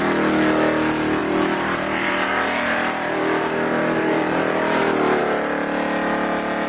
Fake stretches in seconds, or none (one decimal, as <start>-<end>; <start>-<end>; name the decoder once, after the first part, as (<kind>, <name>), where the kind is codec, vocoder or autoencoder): 1.2-5.2 (vocoder, BigVGAN v2)